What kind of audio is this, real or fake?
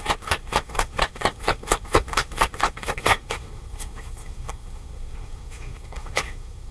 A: fake